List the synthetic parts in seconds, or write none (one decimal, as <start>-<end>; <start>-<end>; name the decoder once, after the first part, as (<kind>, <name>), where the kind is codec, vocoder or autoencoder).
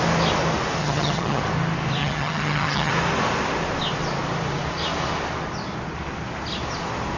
0.8-1.4 (vocoder, HiFi-GAN); 2.0-2.9